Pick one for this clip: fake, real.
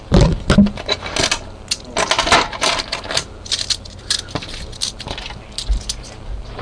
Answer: real